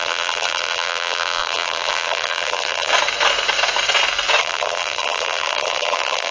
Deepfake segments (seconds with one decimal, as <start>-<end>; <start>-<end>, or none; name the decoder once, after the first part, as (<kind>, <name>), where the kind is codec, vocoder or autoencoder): 0.0-2.9 (vocoder, BigVGAN v2); 4.4-6.3